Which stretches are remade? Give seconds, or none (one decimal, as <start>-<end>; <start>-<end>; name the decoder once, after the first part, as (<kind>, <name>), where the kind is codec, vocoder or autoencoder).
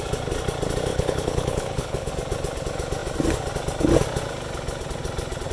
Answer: 0.9-2.1 (codec, HILCodec)